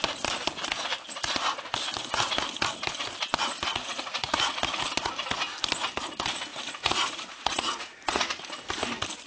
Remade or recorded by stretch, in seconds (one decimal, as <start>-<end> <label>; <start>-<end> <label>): 0.0-3.7 recorded; 3.7-4.5 remade; 4.5-6.5 recorded; 6.5-8.4 remade; 8.4-9.3 recorded